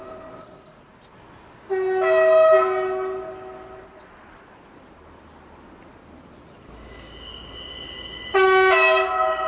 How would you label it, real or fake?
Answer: real